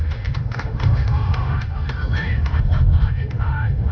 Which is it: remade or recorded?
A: remade